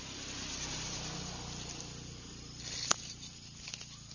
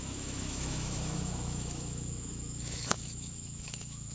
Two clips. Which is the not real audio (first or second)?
second